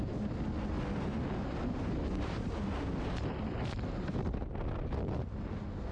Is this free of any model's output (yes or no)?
yes